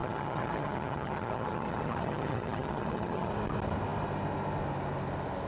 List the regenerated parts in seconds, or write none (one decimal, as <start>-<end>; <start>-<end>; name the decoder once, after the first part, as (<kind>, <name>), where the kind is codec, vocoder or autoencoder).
0.0-3.3 (vocoder, HiFi-GAN)